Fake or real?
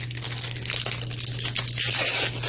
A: real